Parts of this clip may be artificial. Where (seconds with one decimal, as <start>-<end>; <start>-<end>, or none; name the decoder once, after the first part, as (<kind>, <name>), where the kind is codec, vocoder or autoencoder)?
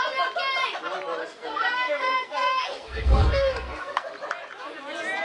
1.2-4.1 (codec, SNAC)